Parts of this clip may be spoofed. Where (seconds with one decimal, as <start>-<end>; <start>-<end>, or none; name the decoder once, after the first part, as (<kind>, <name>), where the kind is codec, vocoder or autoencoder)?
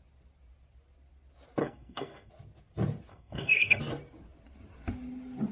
1.6-2.3 (codec, SNAC); 3.1-3.8